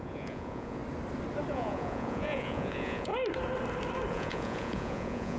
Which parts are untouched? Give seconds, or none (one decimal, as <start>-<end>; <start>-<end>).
0.8-1.5; 3.1-4.1

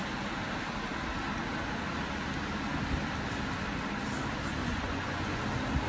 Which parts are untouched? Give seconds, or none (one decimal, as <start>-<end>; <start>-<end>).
0.0-4.6; 5.4-5.9